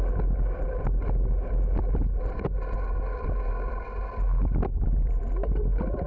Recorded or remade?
recorded